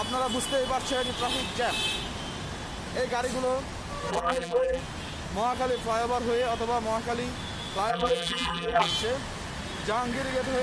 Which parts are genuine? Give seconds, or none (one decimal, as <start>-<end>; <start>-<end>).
0.0-4.1; 4.8-7.9; 8.9-10.6